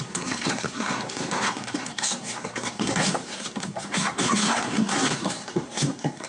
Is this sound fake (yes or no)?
yes